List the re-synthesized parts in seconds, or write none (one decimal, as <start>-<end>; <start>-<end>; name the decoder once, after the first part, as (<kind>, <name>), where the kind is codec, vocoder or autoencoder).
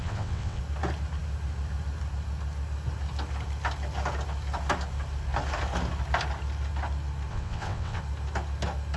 0.0-0.6 (vocoder, WaveNeXt); 7.3-8.0